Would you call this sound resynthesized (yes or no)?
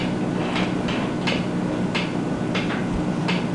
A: no